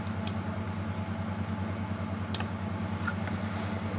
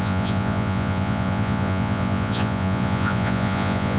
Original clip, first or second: first